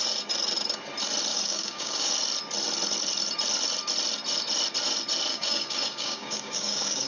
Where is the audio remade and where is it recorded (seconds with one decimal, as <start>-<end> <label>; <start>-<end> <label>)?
0.0-1.3 recorded; 1.3-2.1 remade; 2.1-5.3 recorded; 5.3-7.1 remade